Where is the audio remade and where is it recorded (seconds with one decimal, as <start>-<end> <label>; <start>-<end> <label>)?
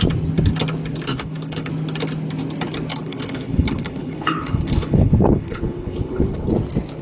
0.0-1.1 recorded; 1.1-1.7 remade; 1.7-2.9 recorded; 2.9-6.5 remade; 6.5-7.0 recorded